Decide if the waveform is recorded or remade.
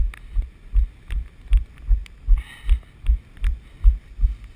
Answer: recorded